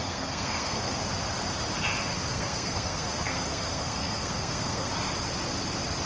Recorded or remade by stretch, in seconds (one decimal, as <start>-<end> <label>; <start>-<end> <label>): 0.0-1.0 remade; 1.0-2.3 recorded; 2.3-4.9 remade; 4.9-6.1 recorded